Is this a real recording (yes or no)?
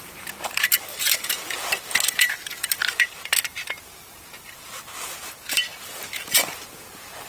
no